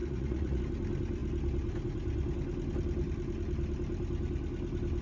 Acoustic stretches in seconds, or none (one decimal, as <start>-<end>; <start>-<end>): 0.6-5.0